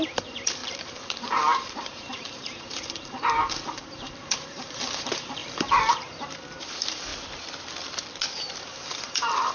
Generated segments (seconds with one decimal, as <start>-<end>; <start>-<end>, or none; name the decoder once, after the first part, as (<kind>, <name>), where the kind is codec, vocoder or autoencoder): 0.0-7.1 (vocoder, BigVGAN v2); 8.3-9.5